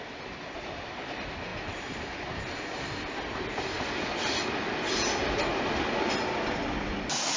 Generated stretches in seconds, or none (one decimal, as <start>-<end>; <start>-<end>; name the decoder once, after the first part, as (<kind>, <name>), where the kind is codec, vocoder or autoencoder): none